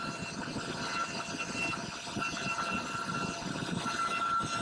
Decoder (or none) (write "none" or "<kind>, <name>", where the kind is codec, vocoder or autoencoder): none